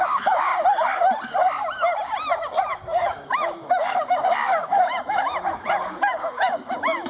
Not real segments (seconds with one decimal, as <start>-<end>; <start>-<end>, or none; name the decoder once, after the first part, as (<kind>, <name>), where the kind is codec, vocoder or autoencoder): 0.0-0.5 (autoencoder, DAC-VAE); 2.6-7.1

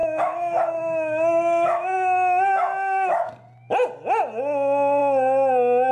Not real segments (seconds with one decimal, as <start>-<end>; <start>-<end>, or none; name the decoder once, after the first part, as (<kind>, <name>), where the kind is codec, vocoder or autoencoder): 0.0-3.3 (autoencoder, DAC-VAE)

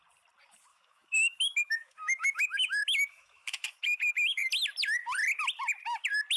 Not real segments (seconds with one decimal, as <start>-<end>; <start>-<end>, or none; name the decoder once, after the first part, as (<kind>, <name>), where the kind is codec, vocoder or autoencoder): 0.7-4.5 (autoencoder, DAC-VAE)

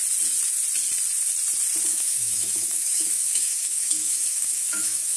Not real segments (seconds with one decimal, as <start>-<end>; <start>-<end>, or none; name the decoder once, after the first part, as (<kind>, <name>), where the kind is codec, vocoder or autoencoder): 1.9-5.2 (autoencoder, DAC-VAE)

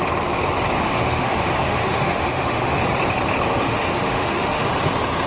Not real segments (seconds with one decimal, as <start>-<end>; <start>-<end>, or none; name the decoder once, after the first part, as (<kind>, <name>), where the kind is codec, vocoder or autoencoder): 0.8-2.8 (autoencoder, DAC-VAE); 3.5-4.6

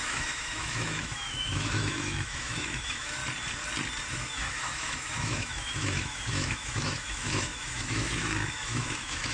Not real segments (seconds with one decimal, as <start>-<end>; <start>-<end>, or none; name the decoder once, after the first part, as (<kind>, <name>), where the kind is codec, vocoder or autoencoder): 0.0-3.2 (autoencoder, DAC-VAE); 4.1-9.3

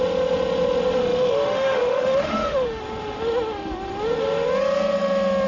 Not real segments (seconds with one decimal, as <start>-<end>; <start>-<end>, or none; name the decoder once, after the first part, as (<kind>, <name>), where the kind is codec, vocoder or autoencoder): 1.0-2.8 (autoencoder, DAC-VAE)